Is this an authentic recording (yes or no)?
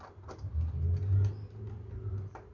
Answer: yes